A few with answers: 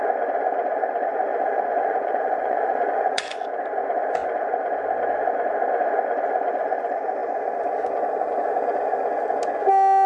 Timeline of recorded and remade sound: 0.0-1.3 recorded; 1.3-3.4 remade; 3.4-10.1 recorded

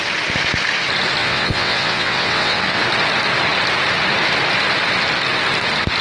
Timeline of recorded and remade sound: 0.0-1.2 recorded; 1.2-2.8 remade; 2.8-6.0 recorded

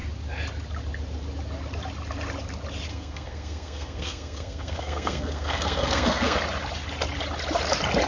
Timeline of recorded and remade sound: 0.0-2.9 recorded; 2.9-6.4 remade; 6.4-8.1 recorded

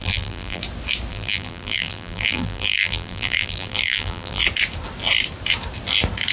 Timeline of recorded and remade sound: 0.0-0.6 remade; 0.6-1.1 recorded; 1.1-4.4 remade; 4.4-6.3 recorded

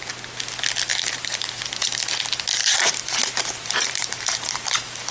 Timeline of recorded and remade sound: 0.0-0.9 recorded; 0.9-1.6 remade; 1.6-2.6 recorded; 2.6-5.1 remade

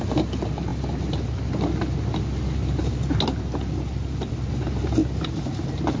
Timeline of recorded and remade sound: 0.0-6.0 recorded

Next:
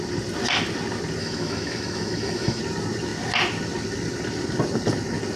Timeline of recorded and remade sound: 0.0-1.2 recorded; 1.2-2.6 remade; 2.6-5.4 recorded

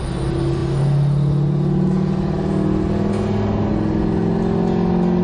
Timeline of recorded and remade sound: 0.0-5.2 recorded